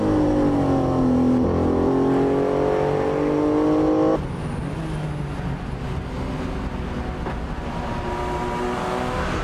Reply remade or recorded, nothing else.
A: recorded